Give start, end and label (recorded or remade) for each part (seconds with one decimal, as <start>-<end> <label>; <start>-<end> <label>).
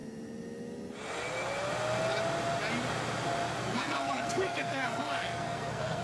0.0-3.6 recorded; 3.6-6.0 remade